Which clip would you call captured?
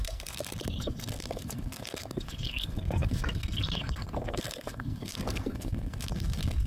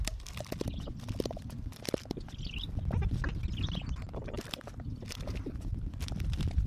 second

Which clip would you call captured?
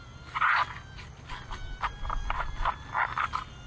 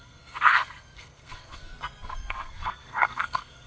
first